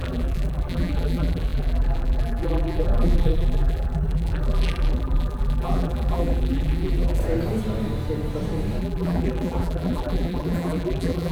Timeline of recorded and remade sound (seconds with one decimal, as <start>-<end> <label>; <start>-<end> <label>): 0.0-7.2 remade; 7.2-8.8 recorded; 8.8-11.3 remade

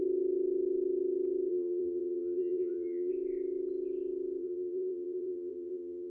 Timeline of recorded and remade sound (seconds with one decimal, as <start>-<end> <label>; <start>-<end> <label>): 0.0-1.5 recorded; 1.5-3.1 remade; 3.1-4.4 recorded; 4.4-6.1 remade